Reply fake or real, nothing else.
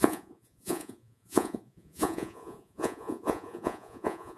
fake